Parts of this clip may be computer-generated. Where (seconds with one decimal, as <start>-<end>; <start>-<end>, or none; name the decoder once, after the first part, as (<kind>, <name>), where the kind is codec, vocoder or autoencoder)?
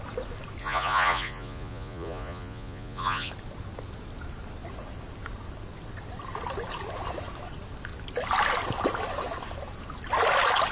0.6-3.3 (vocoder, Vocos)